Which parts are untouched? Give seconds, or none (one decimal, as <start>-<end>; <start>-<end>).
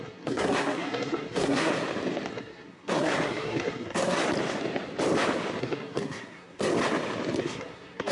1.7-2.3; 4.2-5.6; 6.7-7.4